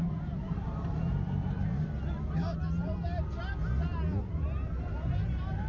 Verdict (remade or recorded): recorded